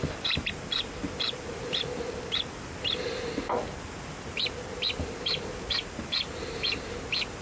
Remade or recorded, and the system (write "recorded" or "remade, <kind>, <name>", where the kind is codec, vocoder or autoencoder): recorded